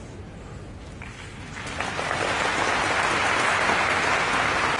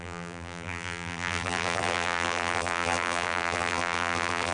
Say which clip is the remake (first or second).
second